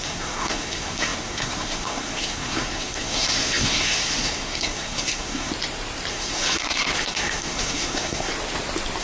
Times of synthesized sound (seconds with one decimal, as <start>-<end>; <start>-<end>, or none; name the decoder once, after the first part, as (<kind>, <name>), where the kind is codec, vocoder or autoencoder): 0.0-5.5 (codec, SNAC); 6.1-8.3